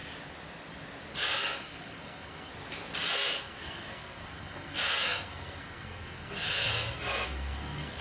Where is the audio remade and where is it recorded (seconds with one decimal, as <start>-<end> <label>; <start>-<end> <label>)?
0.0-1.1 recorded; 1.1-2.5 remade; 2.5-3.1 recorded; 3.1-8.0 remade